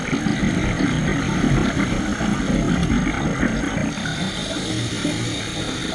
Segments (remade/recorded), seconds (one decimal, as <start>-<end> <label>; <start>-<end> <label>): 0.0-0.4 recorded; 0.4-2.2 remade; 2.2-5.9 recorded